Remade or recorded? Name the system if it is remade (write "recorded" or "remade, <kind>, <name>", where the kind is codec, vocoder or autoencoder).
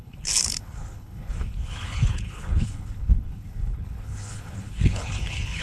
remade, codec, HILCodec